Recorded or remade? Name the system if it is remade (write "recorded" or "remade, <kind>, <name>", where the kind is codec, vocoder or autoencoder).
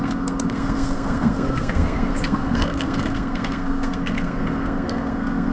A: remade, codec, SNAC